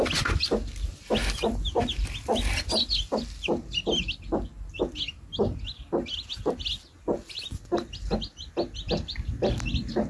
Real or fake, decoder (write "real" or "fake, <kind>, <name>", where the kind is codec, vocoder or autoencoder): real